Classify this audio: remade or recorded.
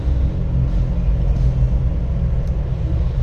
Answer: recorded